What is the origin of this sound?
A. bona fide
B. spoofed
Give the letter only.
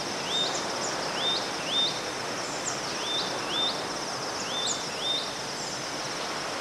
A